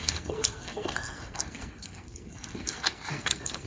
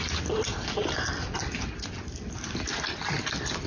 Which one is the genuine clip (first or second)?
second